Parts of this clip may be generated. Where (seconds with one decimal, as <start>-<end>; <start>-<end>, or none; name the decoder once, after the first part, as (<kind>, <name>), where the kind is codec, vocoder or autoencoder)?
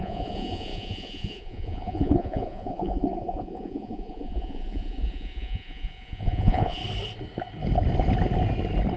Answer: 0.0-6.8 (vocoder, Vocos)